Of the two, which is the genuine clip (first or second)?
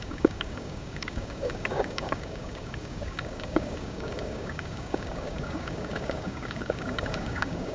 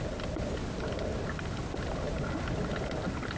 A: second